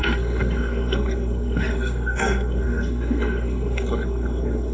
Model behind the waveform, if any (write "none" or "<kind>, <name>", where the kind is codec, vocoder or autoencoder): codec, SNAC